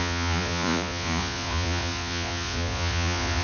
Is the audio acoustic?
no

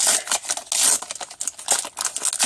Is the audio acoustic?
yes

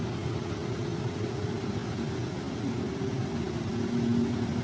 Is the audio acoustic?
yes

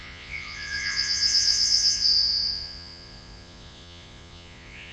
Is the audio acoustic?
no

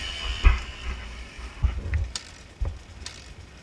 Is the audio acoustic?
yes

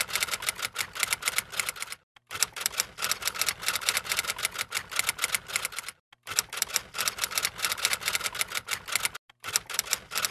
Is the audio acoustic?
yes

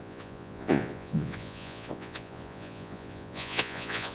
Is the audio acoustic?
no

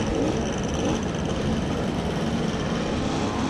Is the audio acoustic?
yes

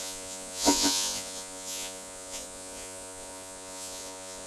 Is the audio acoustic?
no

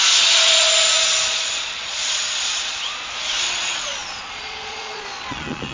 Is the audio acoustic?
no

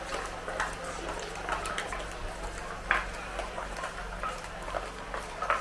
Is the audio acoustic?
yes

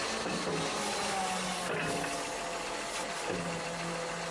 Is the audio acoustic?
yes